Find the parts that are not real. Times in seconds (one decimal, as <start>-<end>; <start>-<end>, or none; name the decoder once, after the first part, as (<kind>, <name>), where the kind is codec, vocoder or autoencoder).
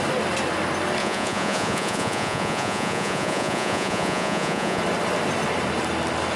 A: 1.0-4.8 (vocoder, Vocos)